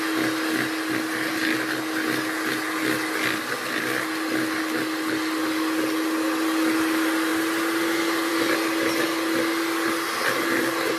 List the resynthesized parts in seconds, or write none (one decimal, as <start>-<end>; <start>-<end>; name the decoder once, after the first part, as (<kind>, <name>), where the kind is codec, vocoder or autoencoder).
none